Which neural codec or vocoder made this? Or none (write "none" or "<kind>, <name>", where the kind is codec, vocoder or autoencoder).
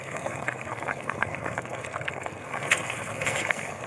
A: codec, SNAC